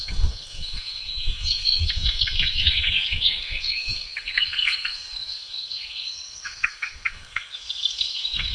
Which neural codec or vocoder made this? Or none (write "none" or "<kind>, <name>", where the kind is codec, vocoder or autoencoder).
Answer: codec, SNAC